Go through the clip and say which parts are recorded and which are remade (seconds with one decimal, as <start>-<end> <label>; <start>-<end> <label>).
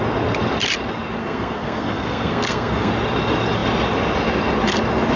0.0-1.2 recorded; 1.2-2.9 remade; 2.9-5.2 recorded